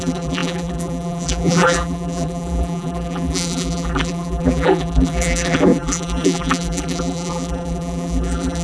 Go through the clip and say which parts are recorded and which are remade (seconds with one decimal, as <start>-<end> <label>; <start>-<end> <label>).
0.0-8.6 remade